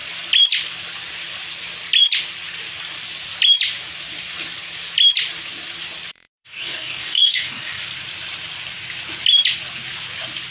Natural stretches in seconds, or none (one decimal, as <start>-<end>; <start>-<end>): 0.0-6.4; 7.8-10.5